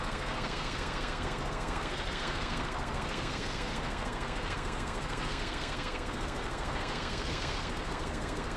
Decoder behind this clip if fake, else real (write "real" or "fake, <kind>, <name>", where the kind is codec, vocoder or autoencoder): fake, codec, SNAC